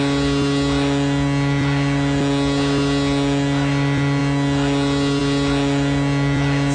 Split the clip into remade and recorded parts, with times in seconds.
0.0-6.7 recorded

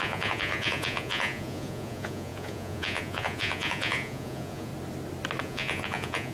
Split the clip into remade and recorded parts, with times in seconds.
0.0-4.7 remade; 4.7-5.4 recorded; 5.4-6.3 remade

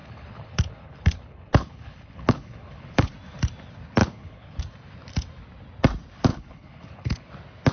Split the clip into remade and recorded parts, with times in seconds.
0.0-3.1 remade; 3.1-4.0 recorded; 4.0-4.6 remade; 4.6-6.3 recorded; 6.3-7.3 remade; 7.3-7.7 recorded

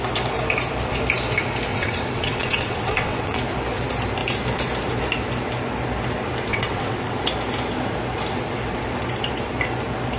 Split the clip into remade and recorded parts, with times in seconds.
0.0-1.7 recorded; 1.7-3.4 remade; 3.4-6.5 recorded; 6.5-7.2 remade; 7.2-10.2 recorded

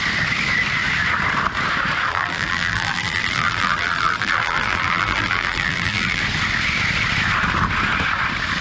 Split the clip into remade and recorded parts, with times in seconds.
0.0-2.1 recorded; 2.1-6.2 remade; 6.2-8.6 recorded

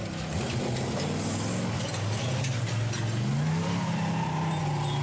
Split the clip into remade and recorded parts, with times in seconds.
0.0-3.3 recorded; 3.3-4.6 remade; 4.6-5.0 recorded

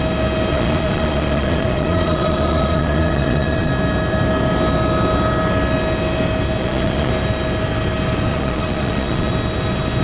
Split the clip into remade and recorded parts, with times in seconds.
0.0-0.5 recorded; 0.5-3.7 remade; 3.7-6.6 recorded; 6.6-7.1 remade; 7.1-8.3 recorded; 8.3-9.3 remade; 9.3-10.0 recorded

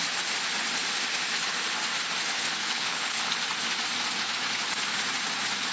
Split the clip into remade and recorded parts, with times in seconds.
0.0-2.6 recorded; 2.6-3.3 remade; 3.3-5.7 recorded